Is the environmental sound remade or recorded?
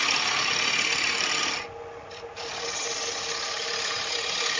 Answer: recorded